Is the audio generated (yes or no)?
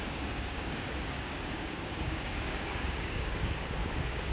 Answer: yes